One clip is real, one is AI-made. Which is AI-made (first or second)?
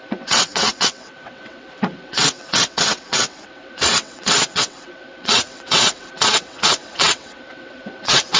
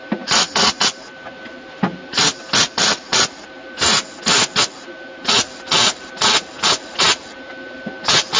first